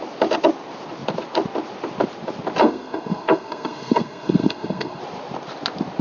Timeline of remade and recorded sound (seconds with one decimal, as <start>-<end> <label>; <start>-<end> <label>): 0.0-2.6 recorded; 2.6-5.0 remade; 5.0-6.0 recorded